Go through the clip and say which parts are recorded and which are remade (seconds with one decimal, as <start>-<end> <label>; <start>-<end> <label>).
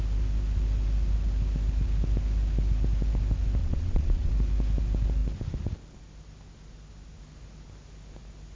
0.0-3.6 recorded; 3.6-4.3 remade; 4.3-8.6 recorded